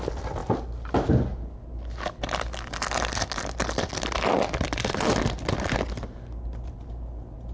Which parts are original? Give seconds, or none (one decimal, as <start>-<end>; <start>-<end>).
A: 0.0-7.5

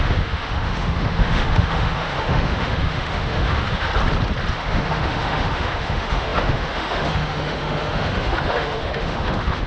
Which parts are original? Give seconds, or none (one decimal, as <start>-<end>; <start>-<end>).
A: 3.9-4.5

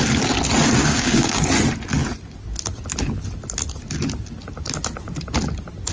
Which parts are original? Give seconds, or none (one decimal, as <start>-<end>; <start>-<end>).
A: 0.0-0.8; 1.5-5.9